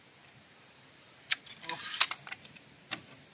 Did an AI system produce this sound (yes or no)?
no